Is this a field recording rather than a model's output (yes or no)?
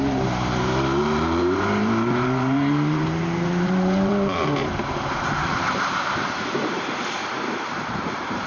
no